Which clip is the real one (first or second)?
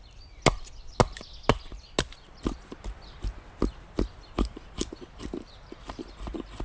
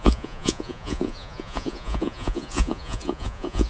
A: first